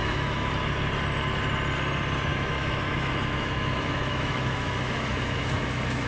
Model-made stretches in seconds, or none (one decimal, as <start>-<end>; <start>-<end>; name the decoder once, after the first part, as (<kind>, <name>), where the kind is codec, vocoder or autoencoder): 0.0-0.5 (autoencoder, DAC-VAE); 2.3-6.1

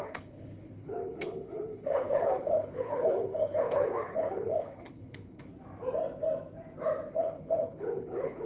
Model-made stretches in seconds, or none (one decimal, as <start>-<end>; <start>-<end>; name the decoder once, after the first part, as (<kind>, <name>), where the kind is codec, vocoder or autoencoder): 0.0-5.5 (codec, HILCodec); 7.1-8.5

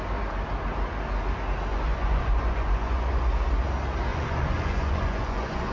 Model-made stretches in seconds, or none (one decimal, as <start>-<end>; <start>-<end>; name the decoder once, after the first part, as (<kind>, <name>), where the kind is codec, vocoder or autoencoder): 1.7-3.2 (vocoder, Vocos); 4.1-5.7

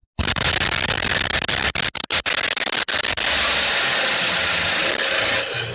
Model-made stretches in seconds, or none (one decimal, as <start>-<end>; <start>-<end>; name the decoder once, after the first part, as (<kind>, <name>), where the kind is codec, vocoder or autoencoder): none

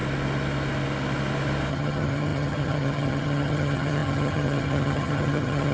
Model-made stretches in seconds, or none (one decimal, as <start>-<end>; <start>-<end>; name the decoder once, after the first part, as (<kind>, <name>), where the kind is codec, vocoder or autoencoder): 1.7-5.7 (vocoder, HiFi-GAN)

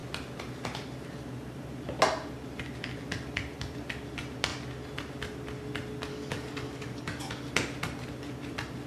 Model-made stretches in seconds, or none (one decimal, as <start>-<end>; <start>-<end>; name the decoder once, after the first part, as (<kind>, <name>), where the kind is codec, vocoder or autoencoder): 6.1-7.3 (codec, DAC)

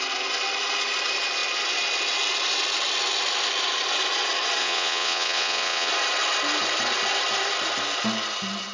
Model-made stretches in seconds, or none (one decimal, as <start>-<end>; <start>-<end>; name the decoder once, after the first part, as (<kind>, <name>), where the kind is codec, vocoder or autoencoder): 4.6-5.9 (vocoder, WaveNeXt)

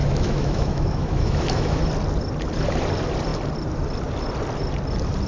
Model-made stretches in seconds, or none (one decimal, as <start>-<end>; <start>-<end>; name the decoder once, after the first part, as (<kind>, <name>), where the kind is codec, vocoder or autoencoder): 0.0-1.8 (autoencoder, DAC-VAE)